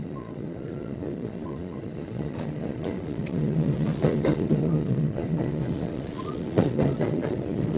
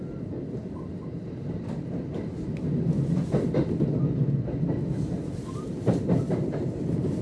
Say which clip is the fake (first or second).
first